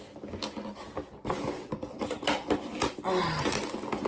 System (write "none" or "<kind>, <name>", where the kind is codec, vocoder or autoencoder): none